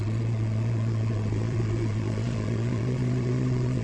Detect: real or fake fake